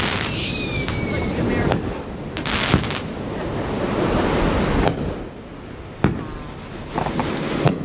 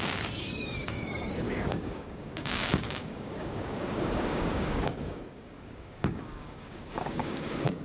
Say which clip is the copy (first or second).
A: second